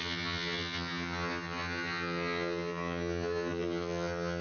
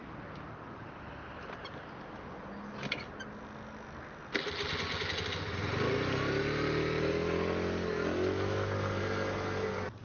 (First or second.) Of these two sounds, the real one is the second